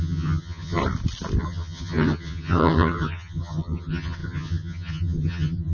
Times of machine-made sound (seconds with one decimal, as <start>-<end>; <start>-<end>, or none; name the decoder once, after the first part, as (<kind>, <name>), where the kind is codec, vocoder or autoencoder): 0.0-0.8 (vocoder, HiFi-GAN); 1.4-5.7